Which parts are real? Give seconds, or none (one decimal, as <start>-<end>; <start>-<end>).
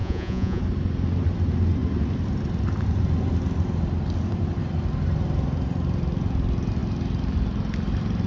0.6-8.3